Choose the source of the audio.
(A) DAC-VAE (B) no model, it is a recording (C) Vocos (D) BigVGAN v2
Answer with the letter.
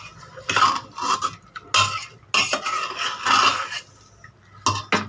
B